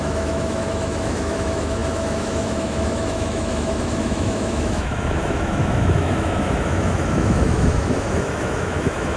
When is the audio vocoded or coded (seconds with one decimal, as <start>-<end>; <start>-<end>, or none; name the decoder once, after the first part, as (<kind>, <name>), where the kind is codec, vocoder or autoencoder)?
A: 0.0-9.2 (autoencoder, DAC-VAE)